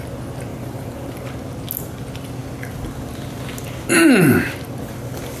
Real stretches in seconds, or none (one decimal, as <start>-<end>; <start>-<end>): 0.0-0.5; 1.3-5.4